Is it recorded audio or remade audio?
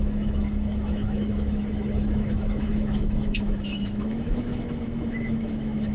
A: remade